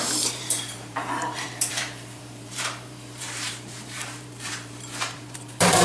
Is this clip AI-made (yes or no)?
yes